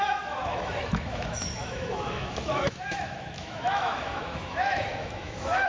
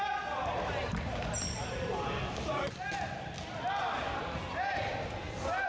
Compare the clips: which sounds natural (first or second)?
second